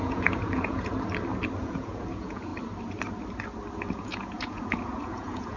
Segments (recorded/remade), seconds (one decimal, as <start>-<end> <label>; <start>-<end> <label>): 0.0-0.9 remade; 0.9-1.6 recorded; 1.6-2.5 remade; 2.5-3.9 recorded; 3.9-5.6 remade